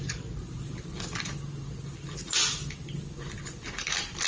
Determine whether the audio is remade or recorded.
recorded